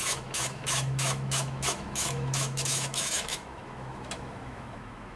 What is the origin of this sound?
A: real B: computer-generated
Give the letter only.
B